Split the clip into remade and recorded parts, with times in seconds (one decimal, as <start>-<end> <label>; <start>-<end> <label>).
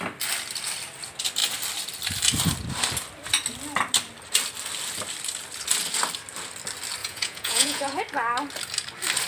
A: 0.0-7.0 recorded; 7.0-8.0 remade; 8.0-9.3 recorded